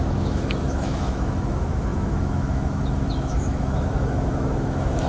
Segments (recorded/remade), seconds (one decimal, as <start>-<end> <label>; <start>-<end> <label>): 0.0-5.1 remade